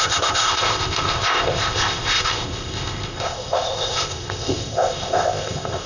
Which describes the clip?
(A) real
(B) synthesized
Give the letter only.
B